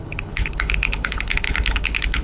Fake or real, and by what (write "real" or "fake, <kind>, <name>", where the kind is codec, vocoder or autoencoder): fake, codec, HILCodec